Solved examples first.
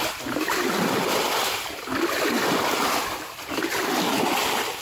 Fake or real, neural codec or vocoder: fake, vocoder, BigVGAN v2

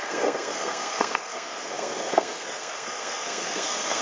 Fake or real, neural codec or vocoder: fake, codec, SNAC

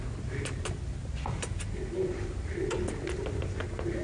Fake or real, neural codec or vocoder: real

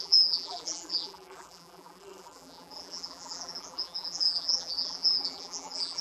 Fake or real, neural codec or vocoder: fake, vocoder, BigVGAN v2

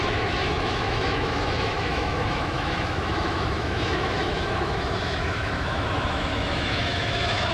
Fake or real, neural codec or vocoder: fake, autoencoder, DAC-VAE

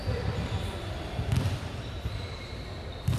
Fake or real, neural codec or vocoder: real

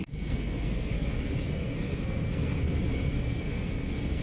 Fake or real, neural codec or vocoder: fake, codec, SNAC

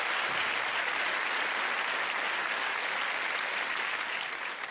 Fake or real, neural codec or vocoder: real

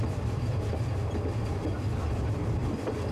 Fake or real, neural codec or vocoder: real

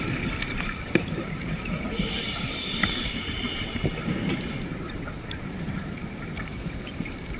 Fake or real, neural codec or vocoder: fake, vocoder, BigVGAN v2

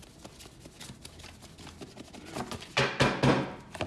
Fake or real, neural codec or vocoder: real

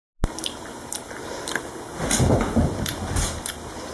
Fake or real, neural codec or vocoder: real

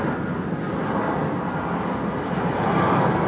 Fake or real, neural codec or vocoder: real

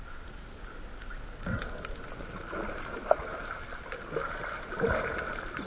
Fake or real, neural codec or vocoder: real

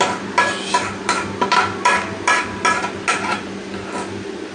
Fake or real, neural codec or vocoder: real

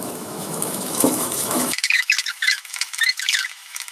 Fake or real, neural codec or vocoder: fake, autoencoder, DAC-VAE